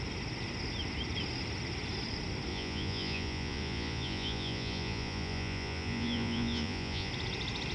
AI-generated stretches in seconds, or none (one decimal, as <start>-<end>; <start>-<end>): 2.5-7.1